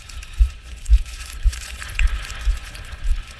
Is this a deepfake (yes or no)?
yes